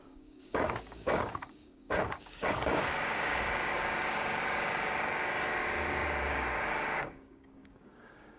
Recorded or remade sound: remade